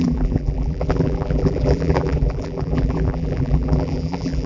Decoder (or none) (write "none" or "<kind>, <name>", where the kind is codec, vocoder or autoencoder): vocoder, BigVGAN v2